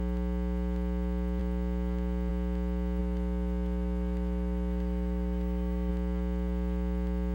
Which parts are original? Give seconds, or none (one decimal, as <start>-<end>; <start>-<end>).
0.0-3.0; 5.9-7.3